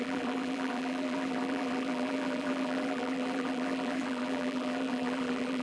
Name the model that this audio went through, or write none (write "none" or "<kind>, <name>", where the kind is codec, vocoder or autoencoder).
vocoder, BigVGAN v2